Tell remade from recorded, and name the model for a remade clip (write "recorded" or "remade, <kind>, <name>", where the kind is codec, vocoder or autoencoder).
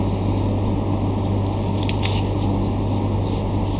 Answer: recorded